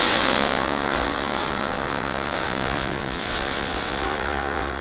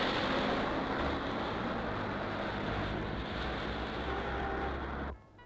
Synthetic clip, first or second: first